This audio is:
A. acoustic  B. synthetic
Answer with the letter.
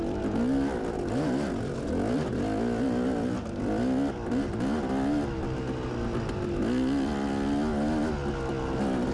A